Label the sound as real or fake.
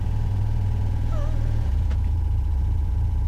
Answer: fake